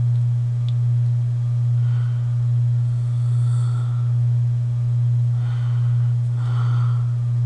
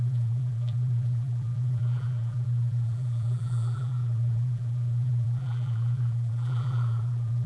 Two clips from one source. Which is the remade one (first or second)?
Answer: second